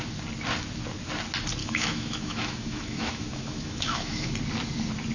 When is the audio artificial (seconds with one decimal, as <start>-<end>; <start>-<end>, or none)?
1.6-4.3